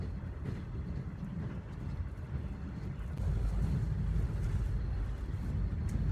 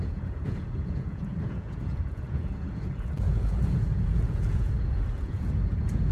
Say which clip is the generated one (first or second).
second